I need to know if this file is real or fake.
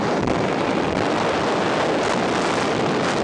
real